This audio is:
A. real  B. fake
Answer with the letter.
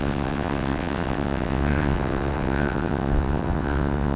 B